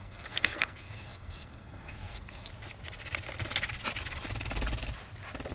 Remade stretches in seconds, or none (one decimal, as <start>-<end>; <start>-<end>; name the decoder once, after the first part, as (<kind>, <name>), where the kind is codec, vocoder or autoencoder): 0.0-2.5 (codec, SNAC)